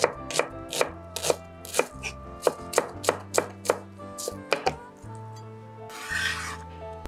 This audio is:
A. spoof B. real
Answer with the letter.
B